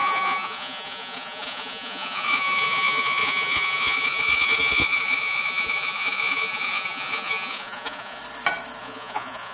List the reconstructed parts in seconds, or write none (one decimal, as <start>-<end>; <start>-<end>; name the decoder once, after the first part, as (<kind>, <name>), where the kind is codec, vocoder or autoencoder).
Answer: 0.0-8.2 (vocoder, Vocos); 8.8-9.5